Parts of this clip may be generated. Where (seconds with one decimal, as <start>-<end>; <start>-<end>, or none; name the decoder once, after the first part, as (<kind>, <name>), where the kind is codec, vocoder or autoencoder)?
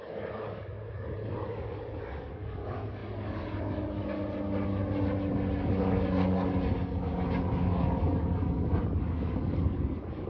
0.0-4.2 (codec, DAC); 5.6-10.3